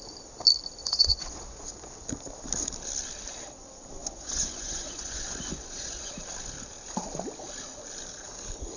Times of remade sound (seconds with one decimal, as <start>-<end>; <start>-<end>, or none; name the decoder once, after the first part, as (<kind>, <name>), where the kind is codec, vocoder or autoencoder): 0.8-1.9 (vocoder, Vocos); 4.0-6.1